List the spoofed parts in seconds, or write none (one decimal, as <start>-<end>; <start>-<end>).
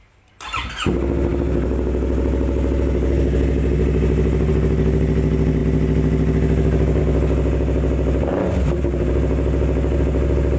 none